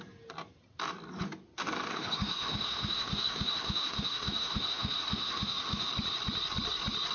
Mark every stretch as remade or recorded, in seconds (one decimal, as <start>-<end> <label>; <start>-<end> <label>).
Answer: 0.0-1.9 recorded; 1.9-5.9 remade; 5.9-7.1 recorded